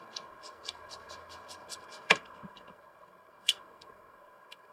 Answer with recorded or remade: remade